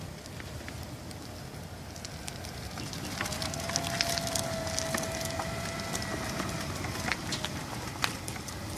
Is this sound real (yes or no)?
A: yes